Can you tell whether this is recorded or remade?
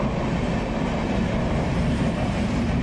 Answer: remade